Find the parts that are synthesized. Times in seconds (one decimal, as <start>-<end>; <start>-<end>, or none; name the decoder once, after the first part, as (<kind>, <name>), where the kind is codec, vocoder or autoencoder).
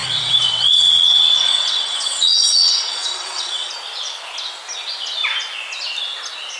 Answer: 0.0-3.7 (vocoder, WaveNeXt)